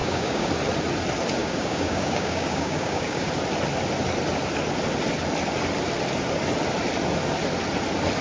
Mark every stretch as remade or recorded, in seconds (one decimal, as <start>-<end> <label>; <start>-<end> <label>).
0.0-0.5 remade; 0.5-1.4 recorded; 1.4-3.3 remade; 3.3-8.2 recorded